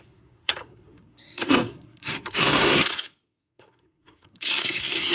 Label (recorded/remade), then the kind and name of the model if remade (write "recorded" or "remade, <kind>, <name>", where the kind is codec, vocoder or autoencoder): remade, codec, SNAC